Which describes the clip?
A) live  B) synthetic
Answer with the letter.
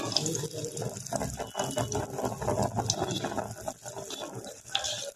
A